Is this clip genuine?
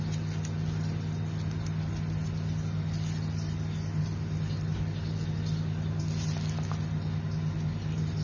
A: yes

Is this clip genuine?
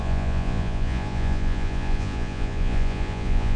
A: no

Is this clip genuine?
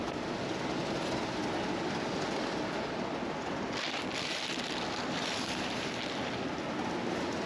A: yes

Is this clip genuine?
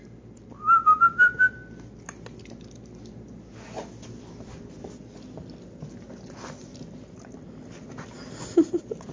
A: yes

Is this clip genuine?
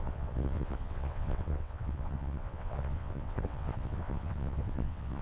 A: no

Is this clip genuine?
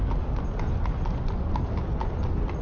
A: yes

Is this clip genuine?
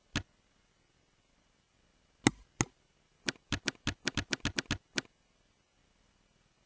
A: yes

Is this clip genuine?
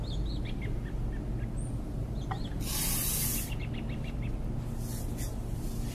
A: yes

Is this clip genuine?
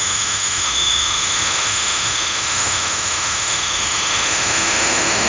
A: no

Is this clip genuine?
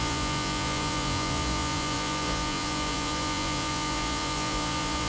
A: no